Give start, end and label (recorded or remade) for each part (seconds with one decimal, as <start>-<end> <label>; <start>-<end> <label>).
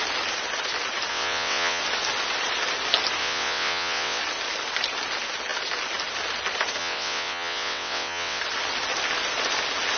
0.0-1.1 recorded; 1.1-1.8 remade; 1.8-3.2 recorded; 3.2-4.2 remade; 4.2-6.8 recorded; 6.8-8.4 remade; 8.4-10.0 recorded